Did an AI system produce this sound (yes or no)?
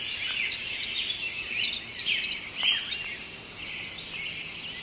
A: no